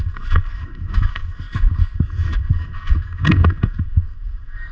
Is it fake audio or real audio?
fake